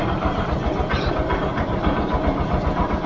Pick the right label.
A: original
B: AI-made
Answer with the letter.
B